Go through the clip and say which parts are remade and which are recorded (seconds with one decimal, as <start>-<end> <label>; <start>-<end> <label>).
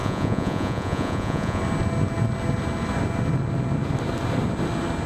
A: 0.0-1.6 remade; 1.6-5.1 recorded